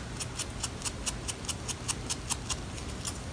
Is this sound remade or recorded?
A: recorded